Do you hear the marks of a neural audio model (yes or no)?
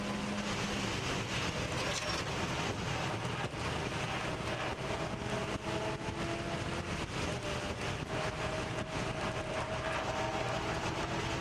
no